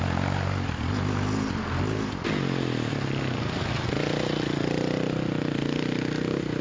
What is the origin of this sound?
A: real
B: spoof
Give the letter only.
A